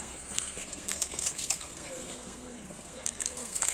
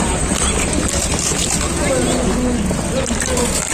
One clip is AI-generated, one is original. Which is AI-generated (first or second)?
first